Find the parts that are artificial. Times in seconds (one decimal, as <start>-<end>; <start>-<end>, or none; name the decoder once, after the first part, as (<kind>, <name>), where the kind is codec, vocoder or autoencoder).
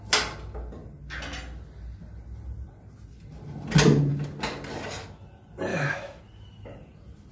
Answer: 5.7-6.2 (autoencoder, DAC-VAE)